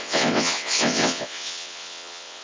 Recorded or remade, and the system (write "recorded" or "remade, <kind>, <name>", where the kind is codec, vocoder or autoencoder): remade, vocoder, WaveNeXt